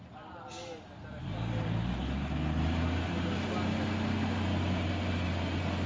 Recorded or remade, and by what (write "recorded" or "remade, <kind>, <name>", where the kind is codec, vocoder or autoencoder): recorded